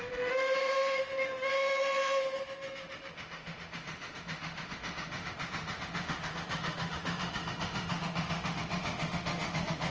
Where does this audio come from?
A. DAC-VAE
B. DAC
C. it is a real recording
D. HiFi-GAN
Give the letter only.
A